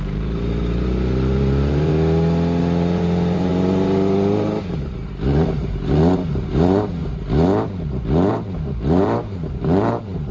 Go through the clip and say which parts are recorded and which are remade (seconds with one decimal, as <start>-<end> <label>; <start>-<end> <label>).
0.0-1.9 remade; 1.9-2.6 recorded; 2.6-7.0 remade; 7.0-8.3 recorded; 8.3-10.3 remade